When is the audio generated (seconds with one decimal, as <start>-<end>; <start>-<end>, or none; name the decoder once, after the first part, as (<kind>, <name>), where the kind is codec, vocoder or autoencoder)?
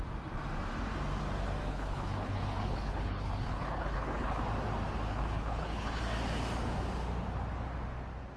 1.7-4.4 (codec, HILCodec); 5.1-6.0